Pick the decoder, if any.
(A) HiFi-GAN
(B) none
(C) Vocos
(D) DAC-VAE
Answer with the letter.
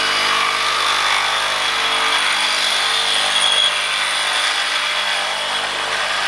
B